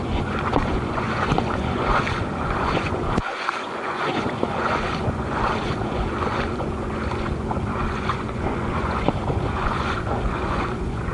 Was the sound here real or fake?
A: fake